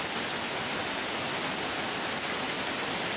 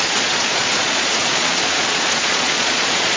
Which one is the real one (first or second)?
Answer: first